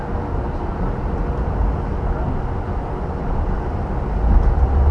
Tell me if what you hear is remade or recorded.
recorded